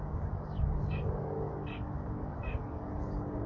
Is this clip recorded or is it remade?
remade